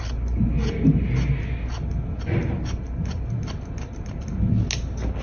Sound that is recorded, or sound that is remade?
recorded